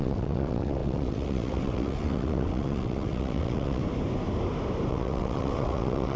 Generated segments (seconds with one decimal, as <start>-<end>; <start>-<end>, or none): 0.0-3.8; 4.9-6.2